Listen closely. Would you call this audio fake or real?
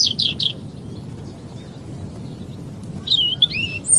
real